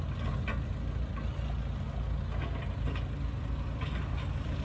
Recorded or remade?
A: recorded